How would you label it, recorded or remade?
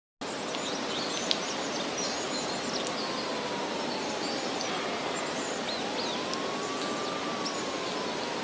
recorded